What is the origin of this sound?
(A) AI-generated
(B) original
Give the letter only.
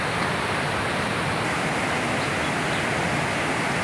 B